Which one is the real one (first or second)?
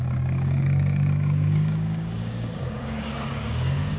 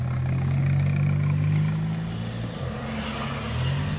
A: second